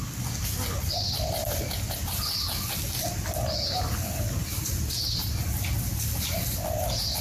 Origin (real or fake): real